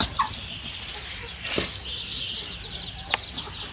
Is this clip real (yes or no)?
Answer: yes